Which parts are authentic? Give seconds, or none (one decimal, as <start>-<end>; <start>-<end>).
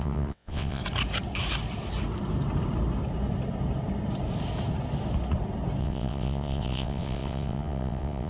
0.8-5.8